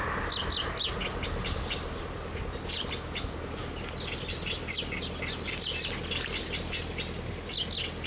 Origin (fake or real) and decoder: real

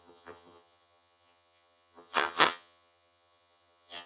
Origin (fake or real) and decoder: fake, vocoder, HiFi-GAN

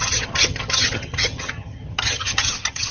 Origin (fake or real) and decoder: fake, vocoder, HiFi-GAN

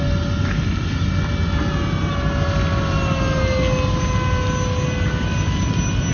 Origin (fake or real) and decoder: real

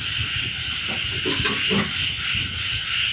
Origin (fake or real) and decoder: real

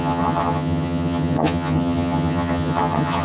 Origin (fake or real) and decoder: fake, vocoder, HiFi-GAN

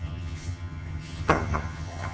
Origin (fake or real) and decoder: fake, vocoder, HiFi-GAN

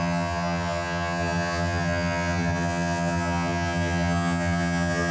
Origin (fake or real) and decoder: fake, vocoder, HiFi-GAN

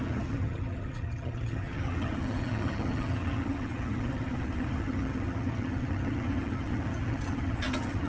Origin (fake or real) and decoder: fake, vocoder, HiFi-GAN